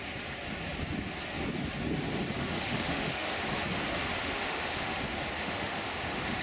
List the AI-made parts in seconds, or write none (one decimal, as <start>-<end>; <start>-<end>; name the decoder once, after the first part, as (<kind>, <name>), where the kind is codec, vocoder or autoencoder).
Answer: 2.4-3.4 (autoencoder, DAC-VAE); 4.2-5.0; 5.4-6.4